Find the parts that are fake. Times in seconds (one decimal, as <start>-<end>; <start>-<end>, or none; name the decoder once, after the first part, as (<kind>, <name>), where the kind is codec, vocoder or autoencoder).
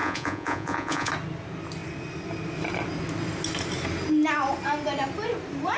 0.0-1.1 (vocoder, Vocos)